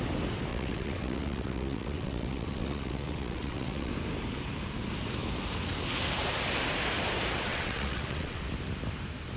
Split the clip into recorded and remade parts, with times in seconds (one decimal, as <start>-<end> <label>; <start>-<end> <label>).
0.0-0.5 recorded; 0.5-3.9 remade; 3.9-7.5 recorded; 7.5-8.4 remade; 8.4-9.4 recorded

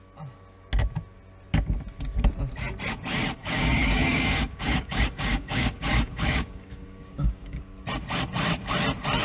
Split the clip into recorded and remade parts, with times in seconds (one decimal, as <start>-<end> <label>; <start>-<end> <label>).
0.0-3.4 recorded; 3.4-7.6 remade; 7.6-9.2 recorded

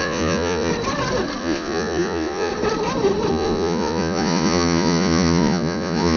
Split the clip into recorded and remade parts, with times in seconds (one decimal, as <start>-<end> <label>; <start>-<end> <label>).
0.0-0.7 remade; 0.7-1.4 recorded; 1.4-2.5 remade; 2.5-3.3 recorded; 3.3-6.2 remade

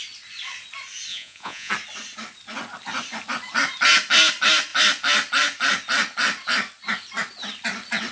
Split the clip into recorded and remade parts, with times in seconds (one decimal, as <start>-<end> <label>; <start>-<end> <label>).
0.0-1.1 recorded; 1.1-1.7 remade; 1.7-8.1 recorded

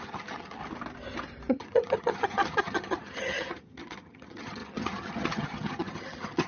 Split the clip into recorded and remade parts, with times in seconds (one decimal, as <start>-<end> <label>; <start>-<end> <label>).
0.0-0.6 remade; 0.6-1.5 recorded; 1.5-6.5 remade

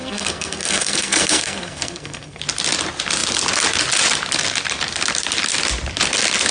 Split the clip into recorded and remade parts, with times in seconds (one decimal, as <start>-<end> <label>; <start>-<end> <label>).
0.0-2.4 remade; 2.4-6.5 recorded

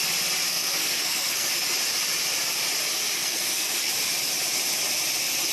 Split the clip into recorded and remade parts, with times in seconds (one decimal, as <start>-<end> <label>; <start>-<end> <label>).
0.0-0.5 recorded; 0.5-1.5 remade; 1.5-3.2 recorded; 3.2-3.9 remade; 3.9-5.5 recorded

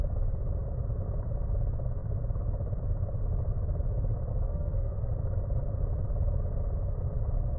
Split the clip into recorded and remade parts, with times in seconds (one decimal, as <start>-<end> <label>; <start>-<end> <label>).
0.0-4.3 recorded; 4.3-5.1 remade; 5.1-7.6 recorded